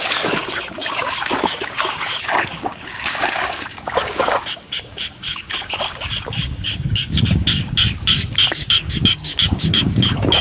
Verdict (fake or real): fake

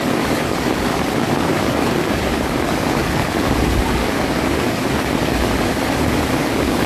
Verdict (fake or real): fake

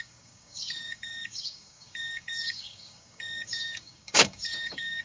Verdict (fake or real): fake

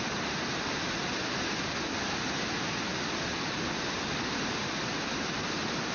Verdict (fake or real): real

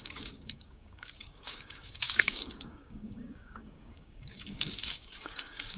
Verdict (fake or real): fake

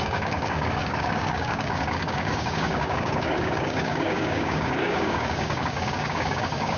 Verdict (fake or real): fake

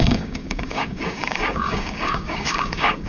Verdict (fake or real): fake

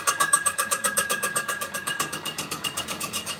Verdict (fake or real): fake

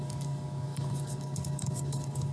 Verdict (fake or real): fake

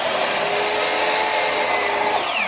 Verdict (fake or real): real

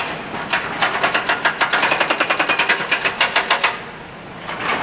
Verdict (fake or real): real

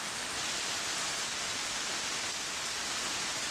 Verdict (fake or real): real